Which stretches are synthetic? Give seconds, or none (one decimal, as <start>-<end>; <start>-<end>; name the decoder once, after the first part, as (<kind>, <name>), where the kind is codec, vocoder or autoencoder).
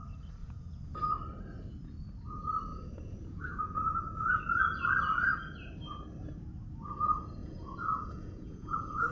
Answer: 0.4-1.0 (vocoder, Vocos); 2.7-4.4; 7.4-9.1